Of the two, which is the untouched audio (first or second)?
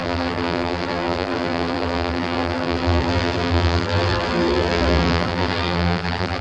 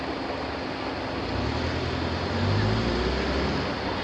second